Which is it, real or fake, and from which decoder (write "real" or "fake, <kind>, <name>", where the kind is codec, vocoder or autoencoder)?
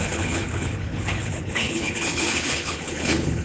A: fake, codec, HILCodec